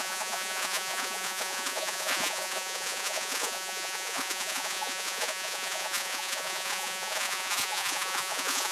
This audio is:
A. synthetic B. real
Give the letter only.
A